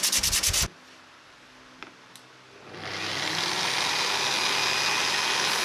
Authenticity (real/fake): real